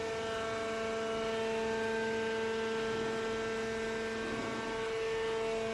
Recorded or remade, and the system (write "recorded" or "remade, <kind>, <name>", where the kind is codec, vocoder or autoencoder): recorded